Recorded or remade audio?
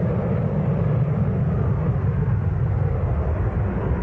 recorded